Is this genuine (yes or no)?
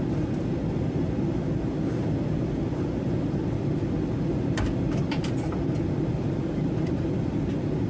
yes